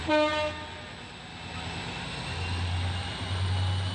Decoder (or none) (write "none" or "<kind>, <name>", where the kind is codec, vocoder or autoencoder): none